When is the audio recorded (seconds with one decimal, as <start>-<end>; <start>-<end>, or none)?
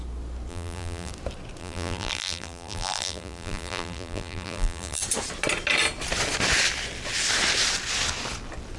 0.0-0.5; 1.1-1.6; 5.0-8.8